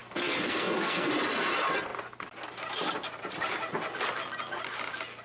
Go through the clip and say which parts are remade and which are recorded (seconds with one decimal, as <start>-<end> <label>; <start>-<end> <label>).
0.0-1.1 remade; 1.1-5.2 recorded